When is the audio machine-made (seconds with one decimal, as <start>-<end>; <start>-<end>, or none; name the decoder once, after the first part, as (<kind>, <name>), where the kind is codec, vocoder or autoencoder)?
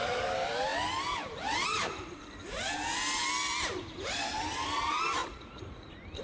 5.2-5.8 (vocoder, Vocos)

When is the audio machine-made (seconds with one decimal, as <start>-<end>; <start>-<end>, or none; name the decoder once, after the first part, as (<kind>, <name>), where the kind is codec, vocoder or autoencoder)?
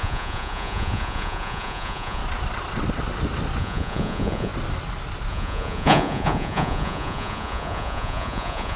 0.0-2.2 (vocoder, Vocos); 3.6-4.5; 5.3-8.8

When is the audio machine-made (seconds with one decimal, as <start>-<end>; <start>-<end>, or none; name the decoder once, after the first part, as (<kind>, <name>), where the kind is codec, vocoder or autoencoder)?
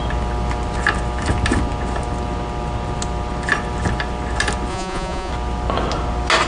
4.7-5.3 (vocoder, Vocos)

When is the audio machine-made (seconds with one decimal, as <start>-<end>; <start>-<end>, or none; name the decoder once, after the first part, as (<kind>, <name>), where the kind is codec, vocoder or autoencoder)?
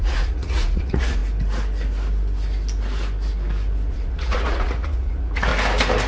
0.0-1.2 (vocoder, Vocos); 3.9-5.5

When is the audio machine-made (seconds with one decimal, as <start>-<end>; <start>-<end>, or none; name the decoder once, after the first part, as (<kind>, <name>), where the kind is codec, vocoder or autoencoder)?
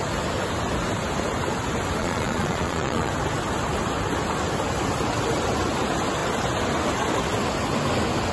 2.0-3.1 (vocoder, Vocos)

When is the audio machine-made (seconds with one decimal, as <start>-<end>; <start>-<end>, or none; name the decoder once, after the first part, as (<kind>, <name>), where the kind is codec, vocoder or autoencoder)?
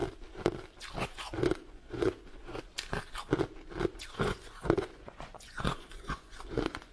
1.0-2.7 (vocoder, Vocos); 4.1-6.9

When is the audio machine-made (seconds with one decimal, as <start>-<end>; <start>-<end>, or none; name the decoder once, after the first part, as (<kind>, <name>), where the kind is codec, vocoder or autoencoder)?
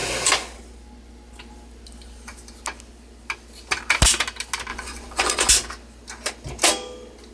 4.7-5.5 (vocoder, Vocos)